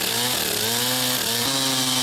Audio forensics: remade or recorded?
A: recorded